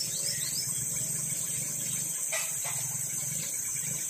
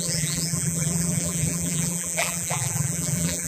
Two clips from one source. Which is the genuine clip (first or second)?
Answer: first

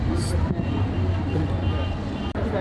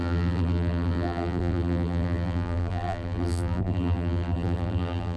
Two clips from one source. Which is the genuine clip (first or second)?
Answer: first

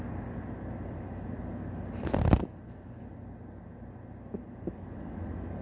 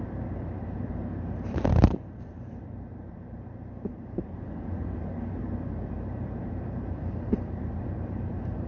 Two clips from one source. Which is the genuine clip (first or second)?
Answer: first